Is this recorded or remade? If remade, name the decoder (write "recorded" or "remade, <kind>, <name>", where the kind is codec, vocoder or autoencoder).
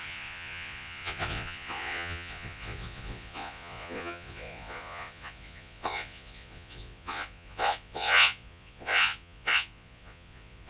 remade, vocoder, Vocos